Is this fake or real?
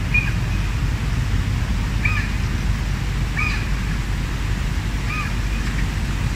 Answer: real